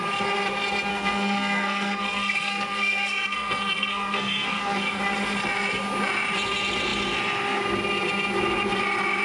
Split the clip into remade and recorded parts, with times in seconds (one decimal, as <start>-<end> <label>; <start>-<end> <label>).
0.0-0.9 recorded; 0.9-5.0 remade; 5.0-9.2 recorded